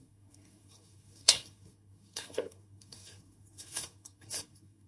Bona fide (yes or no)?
no